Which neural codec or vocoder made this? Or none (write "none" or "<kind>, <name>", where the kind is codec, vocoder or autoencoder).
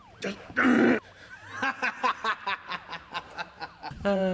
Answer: vocoder, BigVGAN v2